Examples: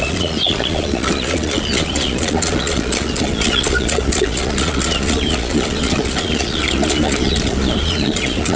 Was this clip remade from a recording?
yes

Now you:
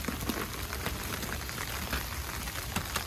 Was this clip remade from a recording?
no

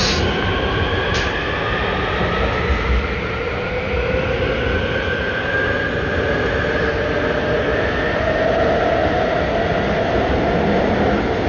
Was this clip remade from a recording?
no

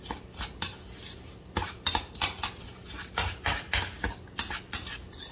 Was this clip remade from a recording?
no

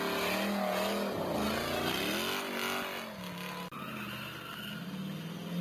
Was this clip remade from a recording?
no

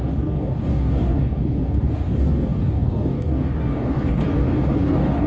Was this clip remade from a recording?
yes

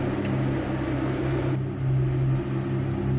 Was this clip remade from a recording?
no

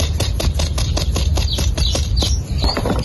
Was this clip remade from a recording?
no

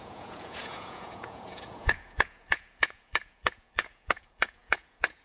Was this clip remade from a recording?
yes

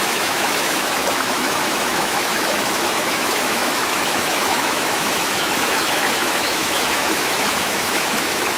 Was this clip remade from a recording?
yes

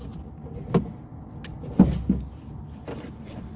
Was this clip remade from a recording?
no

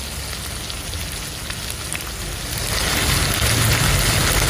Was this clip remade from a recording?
no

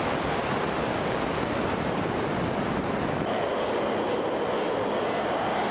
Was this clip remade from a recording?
no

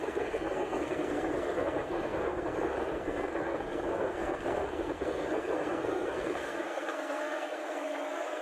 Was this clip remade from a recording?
yes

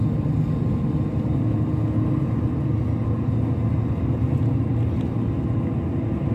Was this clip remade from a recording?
no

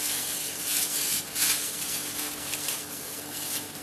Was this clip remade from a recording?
yes